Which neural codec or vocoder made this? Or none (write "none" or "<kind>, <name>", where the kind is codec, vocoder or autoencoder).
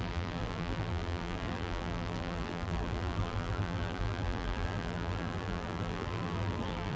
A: vocoder, BigVGAN v2